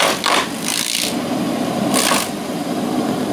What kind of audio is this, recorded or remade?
recorded